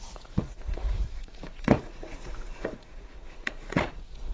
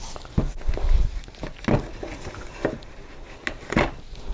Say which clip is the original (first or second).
second